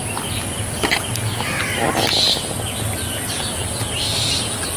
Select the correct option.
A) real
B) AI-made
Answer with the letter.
A